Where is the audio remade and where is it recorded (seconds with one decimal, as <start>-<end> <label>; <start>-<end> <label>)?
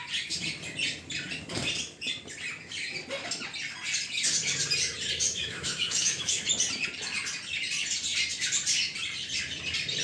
0.0-5.3 recorded; 5.3-6.5 remade; 6.5-10.0 recorded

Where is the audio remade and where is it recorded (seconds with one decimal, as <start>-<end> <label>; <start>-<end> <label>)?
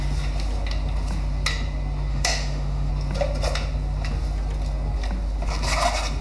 0.0-2.1 recorded; 2.1-2.9 remade; 2.9-6.2 recorded